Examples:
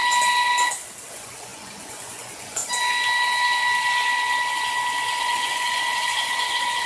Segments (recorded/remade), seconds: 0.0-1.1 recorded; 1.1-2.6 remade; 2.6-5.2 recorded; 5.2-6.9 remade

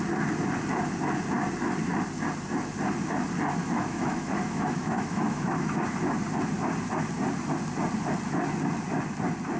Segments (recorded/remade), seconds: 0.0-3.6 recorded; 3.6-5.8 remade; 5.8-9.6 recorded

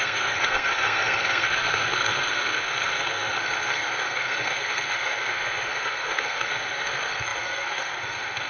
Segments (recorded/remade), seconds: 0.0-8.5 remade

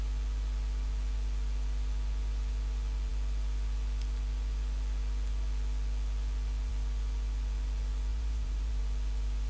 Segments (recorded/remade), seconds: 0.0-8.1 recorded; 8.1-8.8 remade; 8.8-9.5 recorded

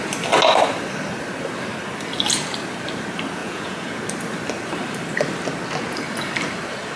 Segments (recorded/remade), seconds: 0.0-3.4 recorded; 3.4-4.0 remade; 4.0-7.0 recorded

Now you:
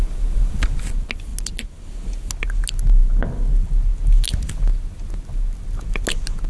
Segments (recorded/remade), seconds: 0.0-6.5 recorded

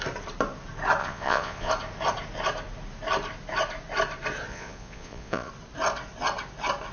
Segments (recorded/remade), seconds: 0.0-1.0 recorded; 1.0-1.7 remade; 1.7-4.5 recorded; 4.5-5.5 remade; 5.5-6.9 recorded

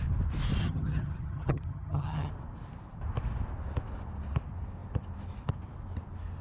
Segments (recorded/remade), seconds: 0.0-0.6 recorded; 0.6-2.3 remade; 2.3-6.4 recorded